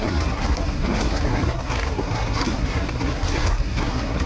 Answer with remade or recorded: remade